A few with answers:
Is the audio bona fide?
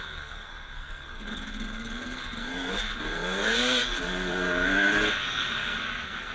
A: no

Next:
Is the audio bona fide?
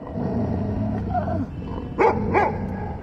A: yes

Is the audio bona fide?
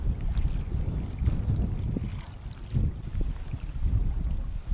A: yes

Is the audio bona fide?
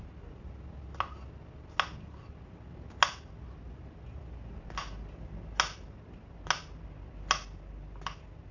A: yes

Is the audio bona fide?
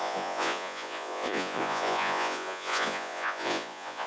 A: no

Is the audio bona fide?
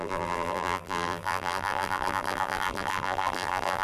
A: no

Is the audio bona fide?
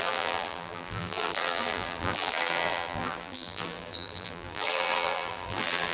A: no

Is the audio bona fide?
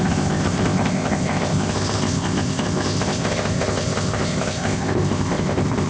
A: no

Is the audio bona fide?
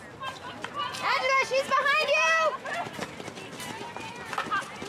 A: yes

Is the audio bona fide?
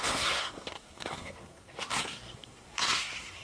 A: no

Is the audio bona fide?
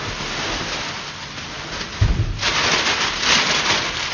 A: yes